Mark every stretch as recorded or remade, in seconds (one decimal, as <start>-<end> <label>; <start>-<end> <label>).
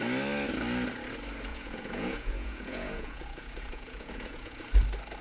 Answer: 0.0-1.5 recorded; 1.5-4.6 remade; 4.6-5.2 recorded